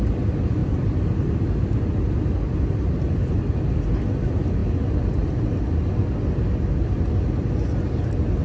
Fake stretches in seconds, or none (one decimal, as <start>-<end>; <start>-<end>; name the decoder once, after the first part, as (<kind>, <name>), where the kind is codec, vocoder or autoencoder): none